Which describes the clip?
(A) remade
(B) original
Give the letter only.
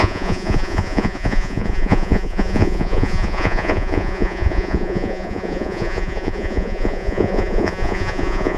A